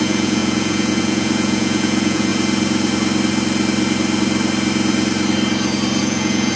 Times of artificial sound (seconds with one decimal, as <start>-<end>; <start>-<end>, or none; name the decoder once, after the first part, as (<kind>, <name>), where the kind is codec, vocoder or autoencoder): 0.0-2.3 (vocoder, Vocos); 6.0-6.6